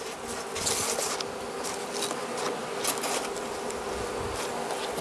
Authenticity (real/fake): real